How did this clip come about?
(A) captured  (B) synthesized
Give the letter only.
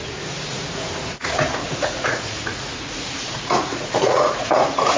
B